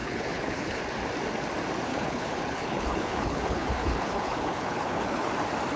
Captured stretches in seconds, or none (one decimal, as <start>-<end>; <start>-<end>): 0.8-1.9; 5.3-5.8